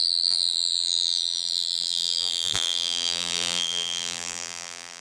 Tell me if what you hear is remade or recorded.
remade